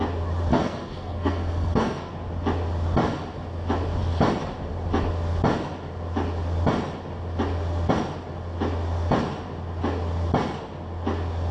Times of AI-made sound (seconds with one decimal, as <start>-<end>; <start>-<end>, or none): 0.5-2.1